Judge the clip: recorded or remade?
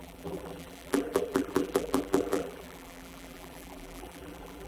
remade